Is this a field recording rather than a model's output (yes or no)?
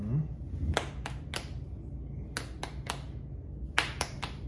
yes